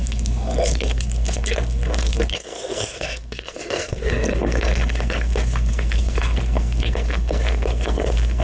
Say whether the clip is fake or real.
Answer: fake